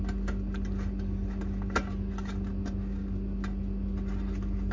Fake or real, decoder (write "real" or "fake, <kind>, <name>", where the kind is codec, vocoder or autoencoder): real